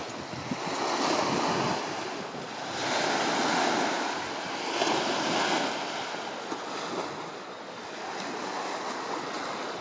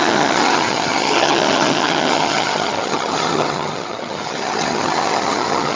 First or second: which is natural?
first